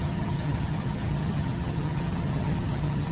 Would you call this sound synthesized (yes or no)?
yes